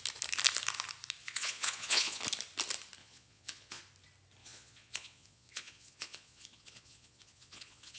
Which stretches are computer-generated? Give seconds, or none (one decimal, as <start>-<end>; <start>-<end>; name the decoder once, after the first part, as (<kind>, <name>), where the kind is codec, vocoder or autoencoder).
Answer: 1.2-2.2 (vocoder, Vocos); 3.0-3.8; 4.4-8.0